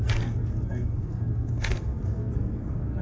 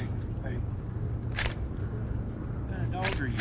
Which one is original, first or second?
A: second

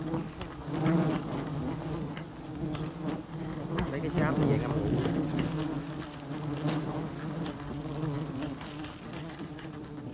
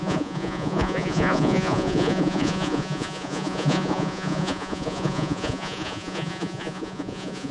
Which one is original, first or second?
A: first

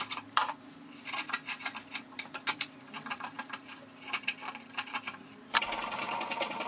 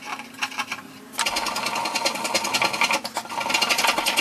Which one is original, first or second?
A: second